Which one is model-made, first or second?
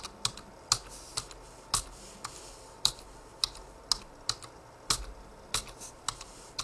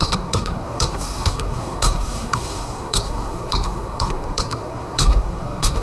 second